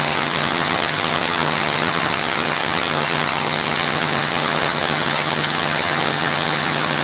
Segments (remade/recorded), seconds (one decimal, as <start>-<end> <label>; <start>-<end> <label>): 0.0-7.0 remade